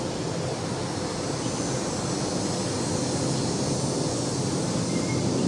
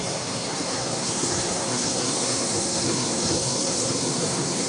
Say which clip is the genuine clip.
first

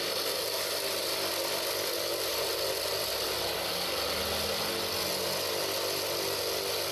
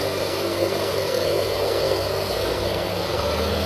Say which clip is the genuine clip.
first